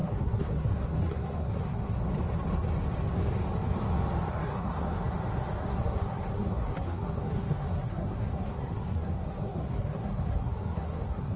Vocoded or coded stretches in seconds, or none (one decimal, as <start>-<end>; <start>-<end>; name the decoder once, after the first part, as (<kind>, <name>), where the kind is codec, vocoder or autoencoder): 0.0-2.0 (codec, SNAC); 4.3-4.9; 5.7-11.4